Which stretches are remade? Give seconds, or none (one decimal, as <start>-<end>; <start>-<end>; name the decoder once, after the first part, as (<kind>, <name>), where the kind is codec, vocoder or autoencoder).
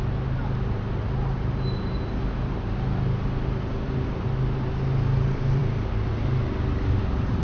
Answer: none